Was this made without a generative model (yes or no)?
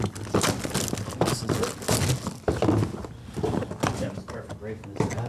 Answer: yes